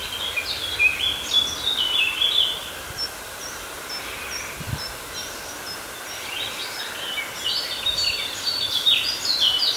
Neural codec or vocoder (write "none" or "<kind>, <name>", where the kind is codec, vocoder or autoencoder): none